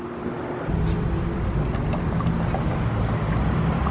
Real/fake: real